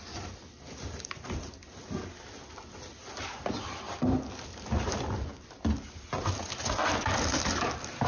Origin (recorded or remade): recorded